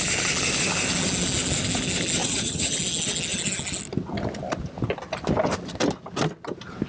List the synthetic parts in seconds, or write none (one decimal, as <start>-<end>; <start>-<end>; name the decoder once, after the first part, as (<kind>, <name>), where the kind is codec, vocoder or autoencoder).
2.2-2.8 (vocoder, WaveNeXt)